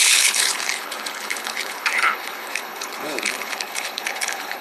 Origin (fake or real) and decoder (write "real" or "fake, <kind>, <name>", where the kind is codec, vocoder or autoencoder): fake, codec, HILCodec